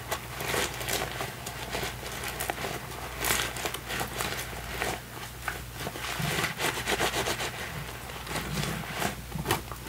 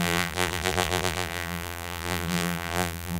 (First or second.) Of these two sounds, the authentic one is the first